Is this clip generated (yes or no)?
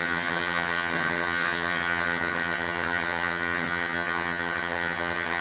yes